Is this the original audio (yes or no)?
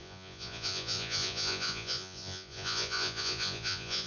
no